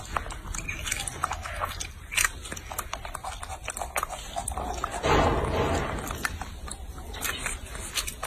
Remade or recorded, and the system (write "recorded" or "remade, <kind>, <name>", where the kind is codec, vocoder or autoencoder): recorded